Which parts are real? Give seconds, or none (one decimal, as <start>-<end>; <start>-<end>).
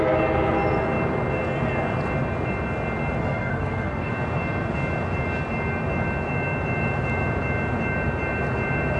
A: 0.0-3.2; 4.1-9.0